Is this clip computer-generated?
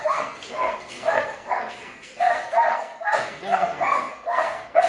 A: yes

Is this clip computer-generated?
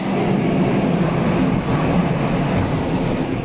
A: no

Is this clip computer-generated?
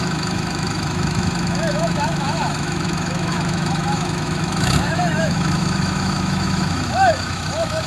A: yes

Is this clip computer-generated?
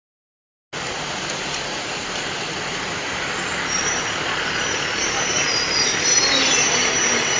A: no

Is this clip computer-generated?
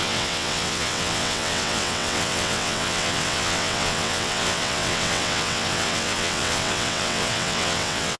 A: yes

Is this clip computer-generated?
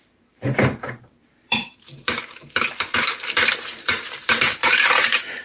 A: yes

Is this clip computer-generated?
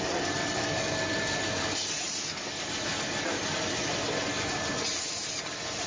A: no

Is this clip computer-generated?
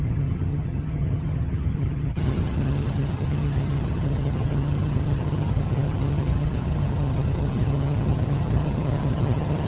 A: yes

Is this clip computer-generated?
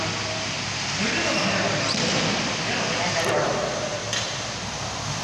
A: no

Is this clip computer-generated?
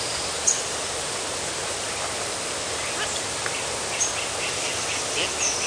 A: no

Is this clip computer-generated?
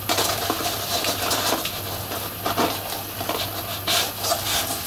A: no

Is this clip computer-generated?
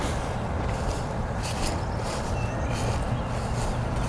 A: no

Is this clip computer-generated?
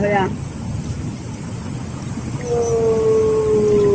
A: no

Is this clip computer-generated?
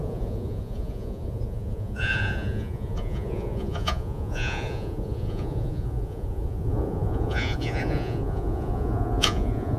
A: yes